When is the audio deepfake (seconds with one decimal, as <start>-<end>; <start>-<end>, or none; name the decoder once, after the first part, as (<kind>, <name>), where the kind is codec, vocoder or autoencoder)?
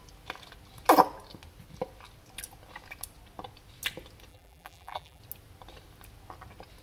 4.3-5.2 (vocoder, BigVGAN v2)